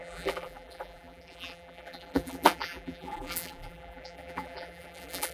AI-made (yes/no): yes